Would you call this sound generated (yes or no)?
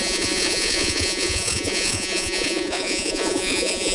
yes